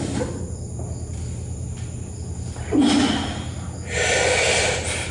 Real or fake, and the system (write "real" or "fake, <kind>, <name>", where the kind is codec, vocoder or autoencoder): real